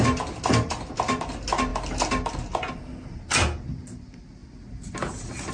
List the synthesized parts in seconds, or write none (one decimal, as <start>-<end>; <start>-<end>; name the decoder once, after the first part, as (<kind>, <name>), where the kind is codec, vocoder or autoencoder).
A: none

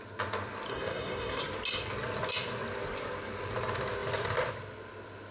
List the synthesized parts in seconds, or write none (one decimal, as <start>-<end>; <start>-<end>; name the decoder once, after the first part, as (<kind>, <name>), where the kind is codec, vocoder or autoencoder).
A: 0.7-1.4 (codec, SNAC)

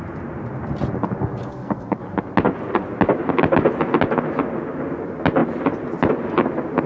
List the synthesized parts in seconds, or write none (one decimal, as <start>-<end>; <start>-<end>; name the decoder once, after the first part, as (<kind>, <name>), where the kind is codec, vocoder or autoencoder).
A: 1.5-2.0 (codec, SNAC)

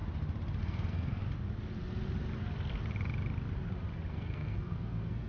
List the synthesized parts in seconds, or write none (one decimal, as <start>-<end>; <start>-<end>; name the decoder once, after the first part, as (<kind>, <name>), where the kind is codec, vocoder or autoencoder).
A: 0.6-1.2 (codec, SNAC); 4.1-5.3

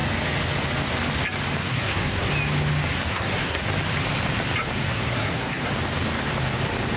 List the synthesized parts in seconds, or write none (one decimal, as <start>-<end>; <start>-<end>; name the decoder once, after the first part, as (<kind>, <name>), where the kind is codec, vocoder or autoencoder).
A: 1.6-2.3 (codec, SNAC); 3.1-3.6; 4.9-5.7

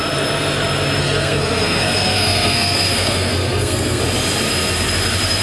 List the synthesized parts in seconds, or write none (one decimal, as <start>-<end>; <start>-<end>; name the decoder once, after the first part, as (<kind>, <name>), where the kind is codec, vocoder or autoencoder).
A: 1.0-4.0 (codec, SNAC)

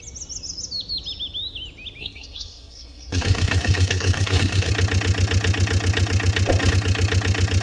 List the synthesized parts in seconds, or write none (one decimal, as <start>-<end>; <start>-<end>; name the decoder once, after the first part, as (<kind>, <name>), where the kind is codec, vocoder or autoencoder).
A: 2.0-4.7 (codec, SNAC)